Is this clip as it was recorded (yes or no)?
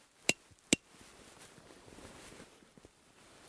yes